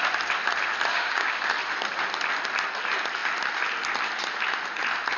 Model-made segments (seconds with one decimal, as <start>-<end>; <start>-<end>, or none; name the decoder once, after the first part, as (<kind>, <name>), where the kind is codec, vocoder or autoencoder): 0.9-1.5 (codec, DAC)

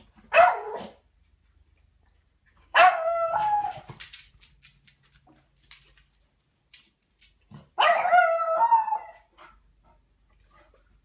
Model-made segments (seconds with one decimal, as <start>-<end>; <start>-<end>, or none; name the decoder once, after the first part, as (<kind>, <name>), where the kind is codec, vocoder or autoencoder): 2.5-3.8 (codec, DAC)

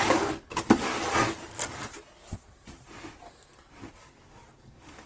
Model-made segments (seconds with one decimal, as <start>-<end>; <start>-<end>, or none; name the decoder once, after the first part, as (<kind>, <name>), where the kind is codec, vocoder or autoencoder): 0.0-0.9 (codec, DAC); 4.0-5.1

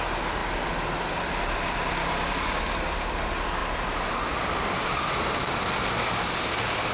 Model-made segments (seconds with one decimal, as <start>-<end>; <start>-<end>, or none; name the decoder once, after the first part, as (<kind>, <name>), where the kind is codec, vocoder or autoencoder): 2.0-2.6 (codec, DAC)